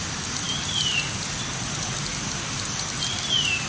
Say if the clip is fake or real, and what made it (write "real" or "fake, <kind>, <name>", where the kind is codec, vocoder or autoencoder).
real